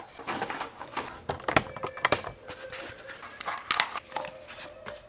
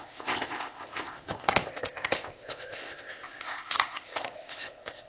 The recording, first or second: first